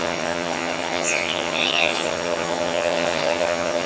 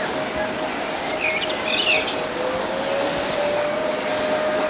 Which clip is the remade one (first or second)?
first